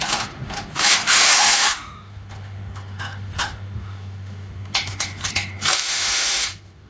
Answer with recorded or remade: remade